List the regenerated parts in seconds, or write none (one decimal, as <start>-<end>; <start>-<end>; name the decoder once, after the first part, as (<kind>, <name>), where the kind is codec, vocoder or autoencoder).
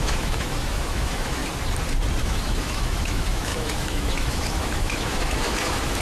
0.0-1.4 (autoencoder, DAC-VAE); 2.2-6.0